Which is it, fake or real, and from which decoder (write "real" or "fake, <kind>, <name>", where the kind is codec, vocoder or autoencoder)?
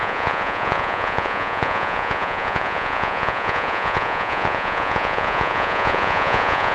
fake, vocoder, Vocos